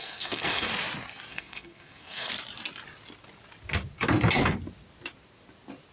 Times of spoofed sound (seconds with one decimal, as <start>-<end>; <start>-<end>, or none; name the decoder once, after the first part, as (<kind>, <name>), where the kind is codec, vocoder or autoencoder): 0.0-0.7 (codec, SNAC); 1.3-2.3